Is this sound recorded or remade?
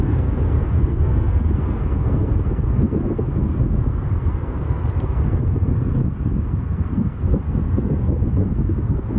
remade